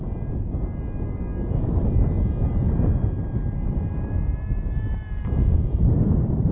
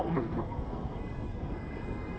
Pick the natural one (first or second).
first